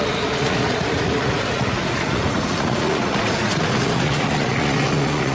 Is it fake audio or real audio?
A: fake